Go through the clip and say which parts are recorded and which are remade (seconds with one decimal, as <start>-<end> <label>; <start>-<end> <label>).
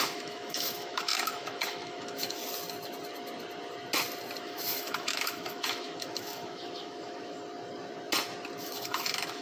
0.0-2.4 remade; 2.4-4.4 recorded; 4.4-7.4 remade; 7.4-8.6 recorded; 8.6-9.4 remade